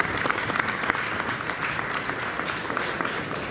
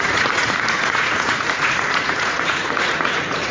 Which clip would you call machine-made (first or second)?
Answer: second